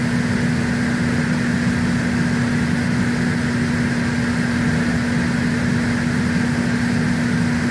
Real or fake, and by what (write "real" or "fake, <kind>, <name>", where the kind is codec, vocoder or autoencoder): real